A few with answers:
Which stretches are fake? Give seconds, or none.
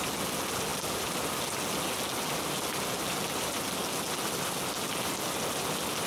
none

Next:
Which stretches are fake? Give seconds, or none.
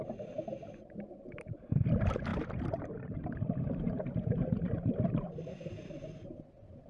2.3-6.4 (vocoder, BigVGAN v2)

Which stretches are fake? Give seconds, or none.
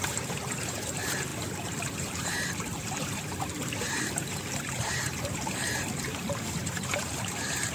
0.0-7.7 (vocoder, BigVGAN v2)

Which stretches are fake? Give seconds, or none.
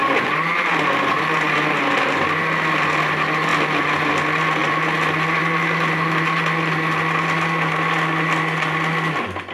none